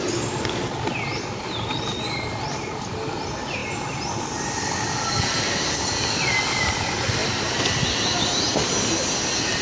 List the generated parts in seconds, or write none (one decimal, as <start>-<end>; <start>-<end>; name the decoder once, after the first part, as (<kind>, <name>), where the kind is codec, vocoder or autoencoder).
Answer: none